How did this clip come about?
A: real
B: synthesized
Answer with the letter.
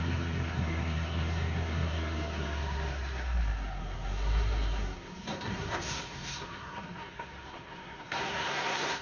B